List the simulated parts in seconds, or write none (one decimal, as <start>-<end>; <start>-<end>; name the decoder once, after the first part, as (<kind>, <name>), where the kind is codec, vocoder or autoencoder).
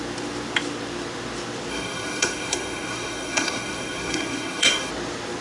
1.7-4.9 (codec, SNAC)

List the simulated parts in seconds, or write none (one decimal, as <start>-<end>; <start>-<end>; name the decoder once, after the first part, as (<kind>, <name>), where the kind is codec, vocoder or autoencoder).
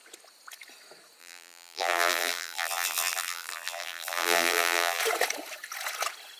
1.2-5.0 (vocoder, BigVGAN v2)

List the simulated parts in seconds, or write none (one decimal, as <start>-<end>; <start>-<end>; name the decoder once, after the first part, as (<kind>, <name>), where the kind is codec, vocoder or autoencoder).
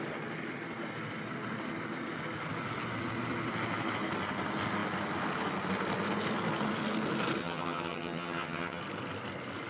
7.4-8.8 (vocoder, HiFi-GAN)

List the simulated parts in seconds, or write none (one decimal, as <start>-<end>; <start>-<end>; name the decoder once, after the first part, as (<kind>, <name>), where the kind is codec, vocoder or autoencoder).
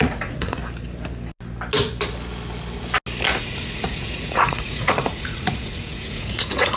0.0-0.6 (vocoder, Vocos); 3.4-6.8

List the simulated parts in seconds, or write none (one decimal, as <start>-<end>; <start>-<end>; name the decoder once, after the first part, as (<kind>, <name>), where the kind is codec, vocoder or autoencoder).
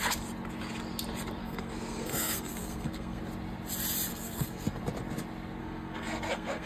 1.4-3.2 (codec, SNAC); 4.1-4.8; 5.6-6.7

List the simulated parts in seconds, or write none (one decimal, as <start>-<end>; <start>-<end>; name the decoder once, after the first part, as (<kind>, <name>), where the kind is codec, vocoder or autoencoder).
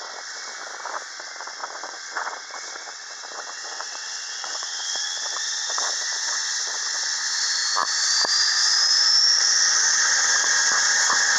0.0-0.5 (vocoder, WaveNeXt); 1.1-7.6; 9.4-11.4